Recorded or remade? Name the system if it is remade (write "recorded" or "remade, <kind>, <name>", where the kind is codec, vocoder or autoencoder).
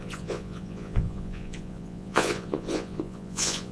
remade, vocoder, Vocos